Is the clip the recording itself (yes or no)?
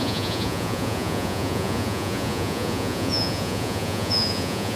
no